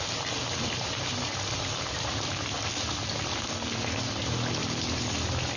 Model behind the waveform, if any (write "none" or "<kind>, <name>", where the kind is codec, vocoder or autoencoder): none